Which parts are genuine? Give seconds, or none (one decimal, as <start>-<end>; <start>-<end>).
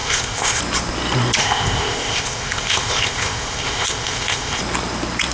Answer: 0.6-1.4; 4.6-5.3